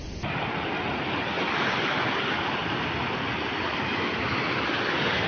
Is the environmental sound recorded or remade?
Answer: recorded